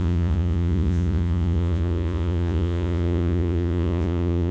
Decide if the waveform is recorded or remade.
remade